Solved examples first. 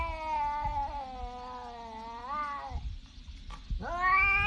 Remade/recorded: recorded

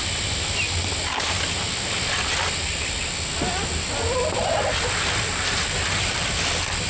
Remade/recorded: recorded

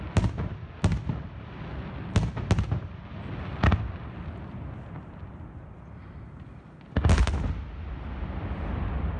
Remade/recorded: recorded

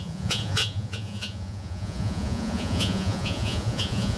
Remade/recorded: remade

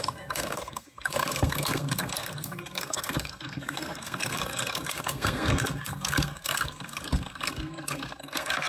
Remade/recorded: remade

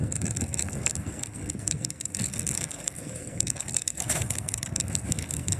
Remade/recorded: remade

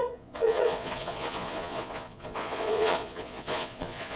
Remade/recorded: remade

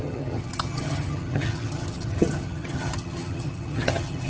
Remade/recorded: remade